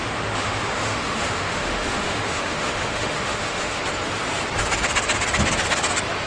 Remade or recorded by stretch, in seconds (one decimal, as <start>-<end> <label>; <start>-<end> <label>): 0.0-3.8 remade; 3.8-6.3 recorded